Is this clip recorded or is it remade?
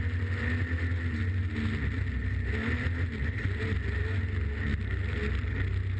recorded